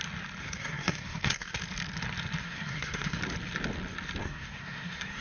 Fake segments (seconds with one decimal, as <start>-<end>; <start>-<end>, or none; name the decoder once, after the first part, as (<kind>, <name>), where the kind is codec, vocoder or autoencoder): 0.4-1.6 (codec, SNAC); 2.4-3.2; 4.2-5.2